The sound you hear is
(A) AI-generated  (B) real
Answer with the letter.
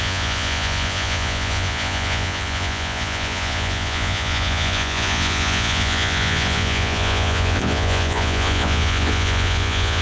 A